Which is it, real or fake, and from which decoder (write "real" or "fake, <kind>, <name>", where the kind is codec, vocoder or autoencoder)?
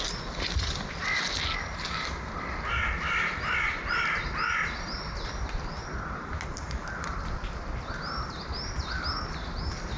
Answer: real